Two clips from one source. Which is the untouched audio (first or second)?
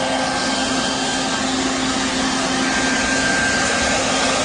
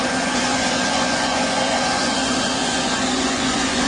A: first